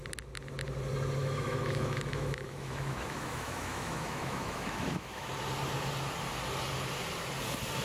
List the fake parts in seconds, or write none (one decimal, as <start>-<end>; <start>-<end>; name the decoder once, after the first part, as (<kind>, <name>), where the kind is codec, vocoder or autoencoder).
1.2-5.3 (autoencoder, DAC-VAE)